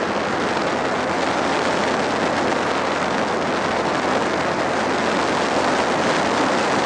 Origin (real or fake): real